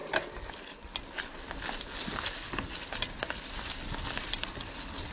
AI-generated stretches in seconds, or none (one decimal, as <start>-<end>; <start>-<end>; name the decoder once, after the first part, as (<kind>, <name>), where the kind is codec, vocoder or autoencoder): none